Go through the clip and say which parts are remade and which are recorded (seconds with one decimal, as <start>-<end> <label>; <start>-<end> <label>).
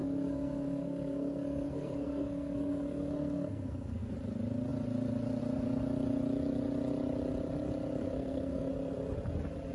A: 0.0-4.1 remade; 4.1-8.0 recorded; 8.0-8.7 remade; 8.7-9.7 recorded